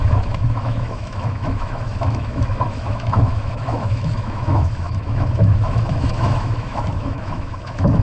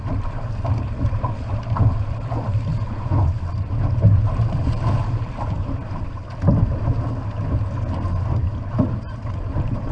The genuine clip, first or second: second